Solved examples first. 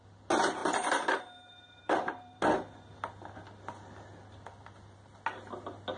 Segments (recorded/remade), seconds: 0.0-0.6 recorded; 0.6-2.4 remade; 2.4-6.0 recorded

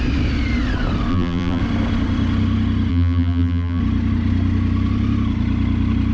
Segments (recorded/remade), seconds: 0.0-1.1 recorded; 1.1-1.6 remade; 1.6-2.9 recorded; 2.9-3.8 remade; 3.8-6.1 recorded

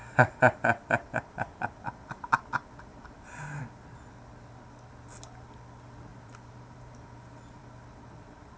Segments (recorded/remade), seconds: 0.0-2.4 remade; 2.4-2.9 recorded; 2.9-3.6 remade; 3.6-6.1 recorded; 6.1-7.6 remade; 7.6-8.6 recorded

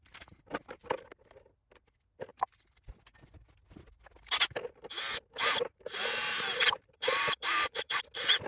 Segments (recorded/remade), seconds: 0.0-6.1 recorded; 6.1-8.0 remade; 8.0-8.5 recorded

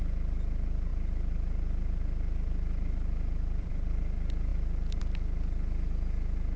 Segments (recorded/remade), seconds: 0.0-0.9 recorded; 0.9-3.7 remade; 3.7-6.6 recorded

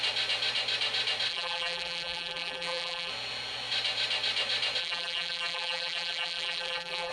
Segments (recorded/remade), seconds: 0.0-1.3 recorded; 1.3-3.1 remade; 3.1-4.8 recorded; 4.8-7.1 remade

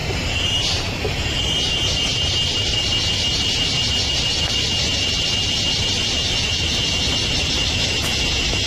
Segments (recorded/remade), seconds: 0.0-1.4 remade; 1.4-2.1 recorded; 2.1-2.8 remade; 2.8-8.7 recorded